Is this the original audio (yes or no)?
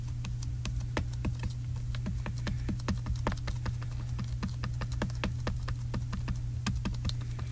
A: yes